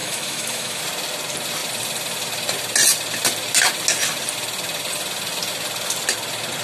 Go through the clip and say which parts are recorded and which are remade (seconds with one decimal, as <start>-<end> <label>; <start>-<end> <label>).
0.0-0.8 remade; 0.8-6.6 recorded